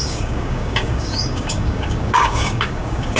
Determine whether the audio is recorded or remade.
remade